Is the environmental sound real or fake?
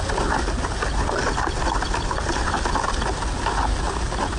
real